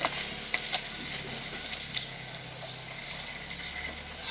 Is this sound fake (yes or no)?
no